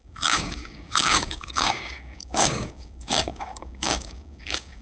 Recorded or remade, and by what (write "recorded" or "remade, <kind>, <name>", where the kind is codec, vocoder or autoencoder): remade, codec, DAC